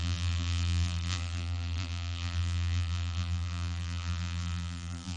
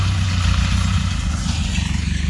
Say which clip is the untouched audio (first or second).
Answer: second